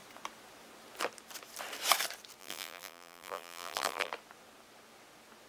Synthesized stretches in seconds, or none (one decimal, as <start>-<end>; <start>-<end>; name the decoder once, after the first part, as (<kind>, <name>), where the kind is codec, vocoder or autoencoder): 2.4-4.1 (vocoder, BigVGAN v2)